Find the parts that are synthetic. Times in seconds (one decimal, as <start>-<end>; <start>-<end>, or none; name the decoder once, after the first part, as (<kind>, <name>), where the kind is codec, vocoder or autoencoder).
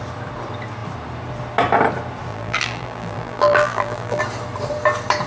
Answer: 2.3-4.2 (vocoder, BigVGAN v2)